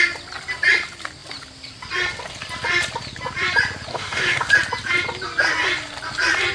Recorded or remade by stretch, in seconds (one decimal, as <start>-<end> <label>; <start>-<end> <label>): 0.0-3.9 recorded; 3.9-4.5 remade; 4.5-6.5 recorded